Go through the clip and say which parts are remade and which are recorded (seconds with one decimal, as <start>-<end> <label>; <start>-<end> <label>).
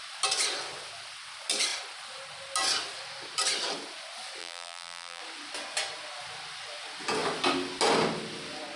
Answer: 0.0-4.4 recorded; 4.4-5.2 remade; 5.2-8.8 recorded